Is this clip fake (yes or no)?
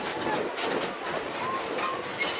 no